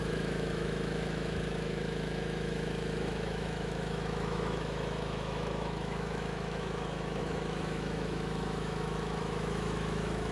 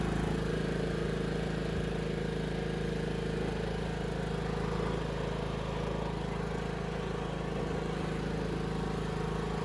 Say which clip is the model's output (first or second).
first